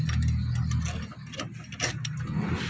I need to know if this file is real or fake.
real